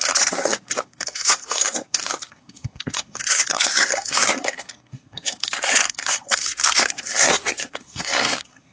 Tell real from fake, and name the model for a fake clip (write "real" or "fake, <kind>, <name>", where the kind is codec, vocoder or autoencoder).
fake, codec, SNAC